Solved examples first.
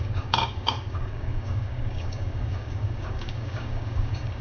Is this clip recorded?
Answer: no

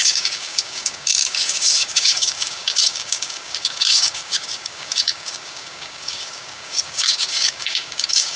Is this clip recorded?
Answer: no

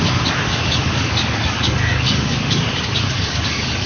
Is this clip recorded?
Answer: no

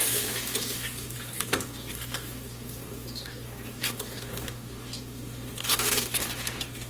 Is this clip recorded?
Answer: no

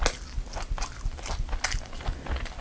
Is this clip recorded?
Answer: yes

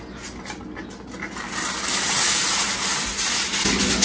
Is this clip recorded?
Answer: yes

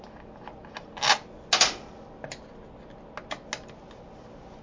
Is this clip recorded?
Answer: yes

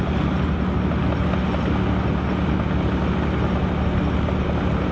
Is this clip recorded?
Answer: yes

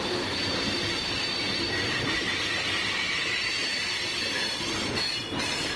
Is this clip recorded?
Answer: yes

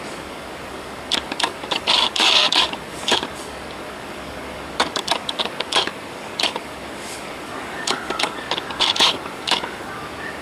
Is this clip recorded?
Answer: no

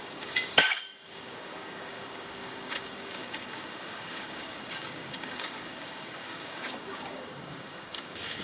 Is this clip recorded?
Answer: no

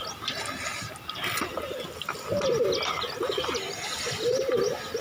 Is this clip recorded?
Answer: yes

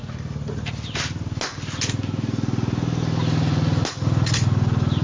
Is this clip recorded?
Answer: yes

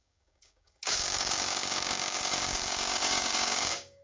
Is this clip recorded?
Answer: no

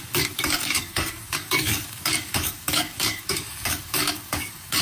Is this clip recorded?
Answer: no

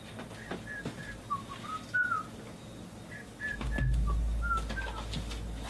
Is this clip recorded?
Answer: yes